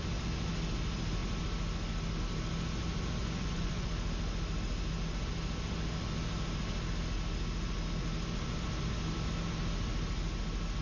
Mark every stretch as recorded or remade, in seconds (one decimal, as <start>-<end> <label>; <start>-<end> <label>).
0.0-3.2 recorded; 3.2-3.9 remade; 3.9-10.8 recorded